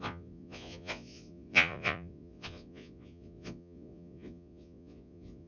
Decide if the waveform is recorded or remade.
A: remade